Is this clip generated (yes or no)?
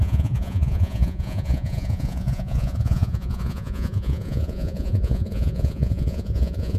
yes